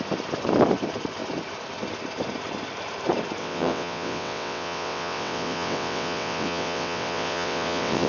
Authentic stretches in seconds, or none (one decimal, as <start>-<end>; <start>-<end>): 0.0-3.4